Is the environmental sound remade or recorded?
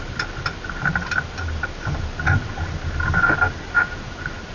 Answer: recorded